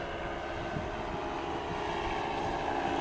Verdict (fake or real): real